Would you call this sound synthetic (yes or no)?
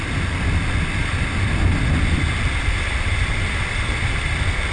no